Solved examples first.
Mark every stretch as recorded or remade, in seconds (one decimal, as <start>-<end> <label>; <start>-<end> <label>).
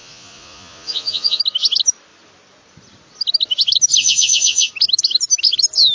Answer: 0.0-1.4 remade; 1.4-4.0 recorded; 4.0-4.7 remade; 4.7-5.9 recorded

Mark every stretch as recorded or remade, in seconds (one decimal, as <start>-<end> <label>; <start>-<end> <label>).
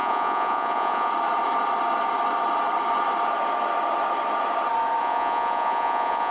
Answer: 0.0-1.1 remade; 1.1-5.0 recorded; 5.0-6.3 remade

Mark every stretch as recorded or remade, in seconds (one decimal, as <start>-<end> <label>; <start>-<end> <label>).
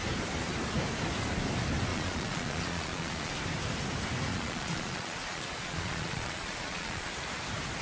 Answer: 0.0-1.9 recorded; 1.9-3.3 remade; 3.3-4.3 recorded; 4.3-7.1 remade; 7.1-7.8 recorded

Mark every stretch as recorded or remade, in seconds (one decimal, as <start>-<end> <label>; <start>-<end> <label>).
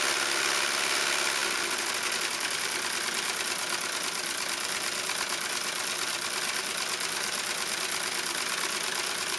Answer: 0.0-9.4 recorded